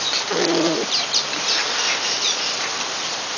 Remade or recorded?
recorded